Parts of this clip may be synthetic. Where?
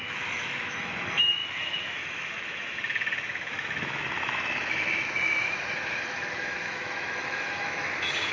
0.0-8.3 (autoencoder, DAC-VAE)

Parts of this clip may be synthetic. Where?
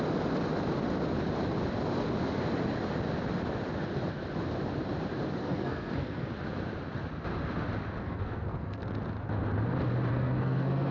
5.4-6.3 (codec, SNAC); 8.0-8.8; 10.1-10.9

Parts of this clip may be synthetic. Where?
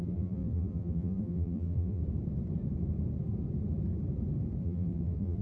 0.0-2.0 (vocoder, BigVGAN v2); 4.6-5.4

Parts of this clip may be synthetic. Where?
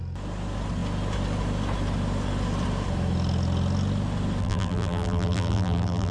4.4-6.1 (vocoder, BigVGAN v2)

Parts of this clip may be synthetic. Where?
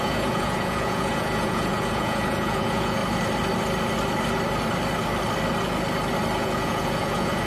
0.0-3.0 (vocoder, Vocos); 6.4-7.5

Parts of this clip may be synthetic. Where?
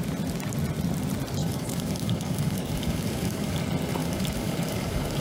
1.4-3.6 (codec, DAC); 4.0-5.2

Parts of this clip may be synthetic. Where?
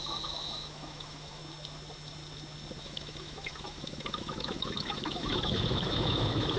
0.0-1.4 (autoencoder, DAC-VAE); 2.8-6.6